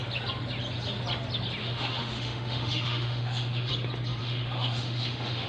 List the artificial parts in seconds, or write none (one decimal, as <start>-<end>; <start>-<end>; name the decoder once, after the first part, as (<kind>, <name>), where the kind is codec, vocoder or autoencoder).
1.6-3.7 (autoencoder, DAC-VAE); 4.2-5.5